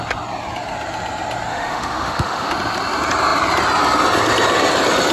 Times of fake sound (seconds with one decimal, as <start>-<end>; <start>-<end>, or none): 1.5-2.5